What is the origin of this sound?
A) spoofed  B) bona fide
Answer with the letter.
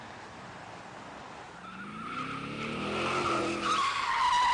B